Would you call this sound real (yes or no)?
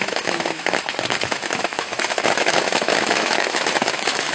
no